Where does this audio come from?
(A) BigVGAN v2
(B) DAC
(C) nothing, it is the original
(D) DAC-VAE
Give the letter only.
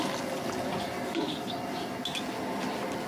C